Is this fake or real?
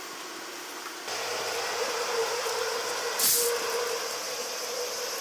real